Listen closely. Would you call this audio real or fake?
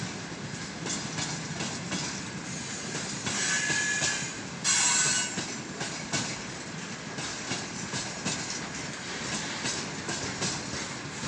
real